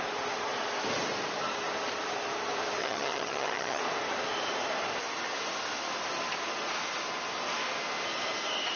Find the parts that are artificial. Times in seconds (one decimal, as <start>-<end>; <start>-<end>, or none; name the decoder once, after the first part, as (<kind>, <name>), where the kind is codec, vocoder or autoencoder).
2.8-3.8 (vocoder, HiFi-GAN)

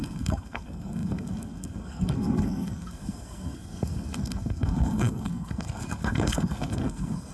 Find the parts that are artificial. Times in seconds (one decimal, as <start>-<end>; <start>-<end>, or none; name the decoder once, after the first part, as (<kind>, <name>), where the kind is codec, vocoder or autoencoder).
0.0-7.3 (codec, SNAC)

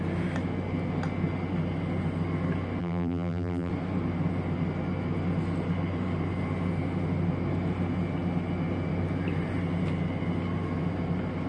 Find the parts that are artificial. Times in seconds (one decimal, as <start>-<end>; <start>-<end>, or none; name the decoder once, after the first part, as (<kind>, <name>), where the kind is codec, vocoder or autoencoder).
2.8-3.7 (vocoder, BigVGAN v2)